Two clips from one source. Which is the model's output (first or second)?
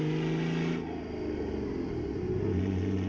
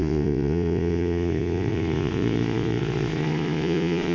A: second